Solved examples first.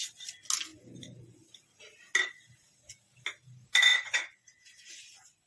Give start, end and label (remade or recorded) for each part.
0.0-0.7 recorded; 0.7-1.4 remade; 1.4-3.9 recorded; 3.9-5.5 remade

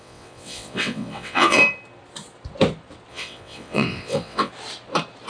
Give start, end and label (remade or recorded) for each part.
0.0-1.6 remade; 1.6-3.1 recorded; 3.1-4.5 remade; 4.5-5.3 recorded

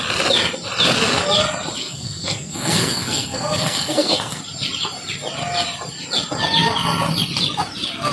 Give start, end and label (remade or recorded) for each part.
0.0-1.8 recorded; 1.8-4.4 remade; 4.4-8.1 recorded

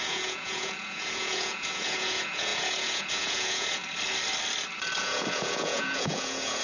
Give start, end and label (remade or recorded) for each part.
0.0-3.8 remade; 3.8-5.0 recorded; 5.0-6.6 remade

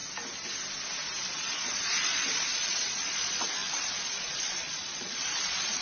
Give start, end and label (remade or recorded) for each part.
0.0-1.2 recorded; 1.2-5.8 remade

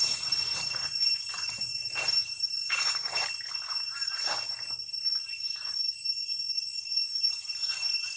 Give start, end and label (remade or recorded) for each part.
0.0-0.5 recorded; 0.5-1.9 remade; 1.9-2.6 recorded; 2.6-3.5 remade; 3.5-6.1 recorded; 6.1-8.2 remade

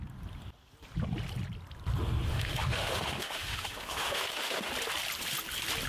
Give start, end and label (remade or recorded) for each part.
0.0-2.3 recorded; 2.3-4.7 remade; 4.7-5.9 recorded